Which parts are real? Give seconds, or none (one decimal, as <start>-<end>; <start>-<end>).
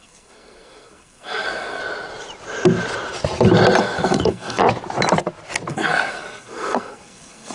1.8-3.8; 4.6-5.7